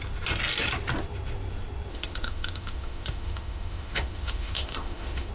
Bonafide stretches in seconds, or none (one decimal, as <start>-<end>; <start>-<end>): 0.0-1.9